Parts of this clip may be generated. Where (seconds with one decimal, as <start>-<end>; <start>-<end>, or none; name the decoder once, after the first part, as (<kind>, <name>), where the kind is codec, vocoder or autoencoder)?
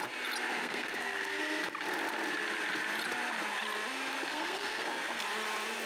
0.6-1.4 (codec, SNAC); 4.3-5.2